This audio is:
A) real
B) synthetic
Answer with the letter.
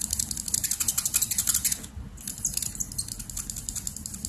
A